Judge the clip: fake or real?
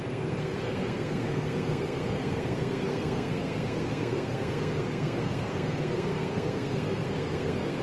fake